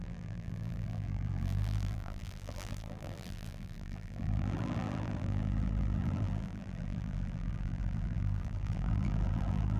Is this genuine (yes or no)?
no